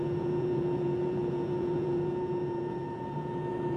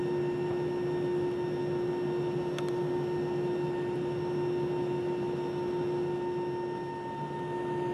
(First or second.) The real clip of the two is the second